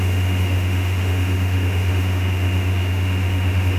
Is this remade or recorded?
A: remade